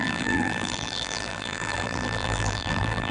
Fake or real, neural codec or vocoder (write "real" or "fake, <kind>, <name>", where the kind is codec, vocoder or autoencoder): fake, vocoder, BigVGAN v2